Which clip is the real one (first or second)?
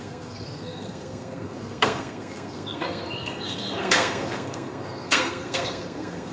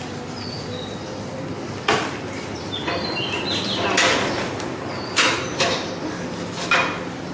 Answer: second